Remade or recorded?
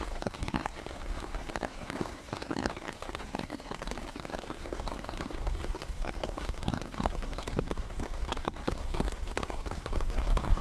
remade